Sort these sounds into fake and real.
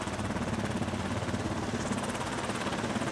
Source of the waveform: real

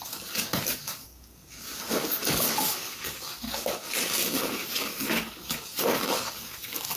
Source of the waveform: fake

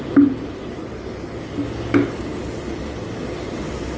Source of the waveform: real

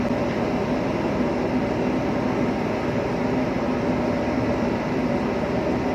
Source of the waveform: real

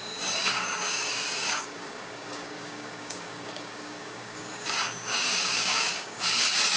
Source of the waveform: fake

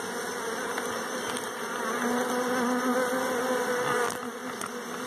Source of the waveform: real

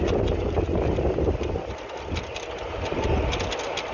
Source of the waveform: real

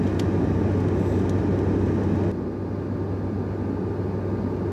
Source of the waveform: real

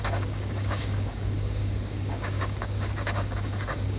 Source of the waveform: fake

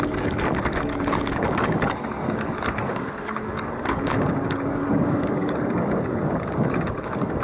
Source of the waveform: fake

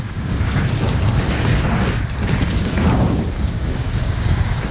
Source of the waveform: fake